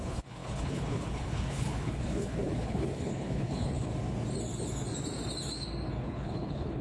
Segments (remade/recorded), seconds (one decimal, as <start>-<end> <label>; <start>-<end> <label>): 0.0-3.9 remade; 3.9-6.0 recorded; 6.0-6.8 remade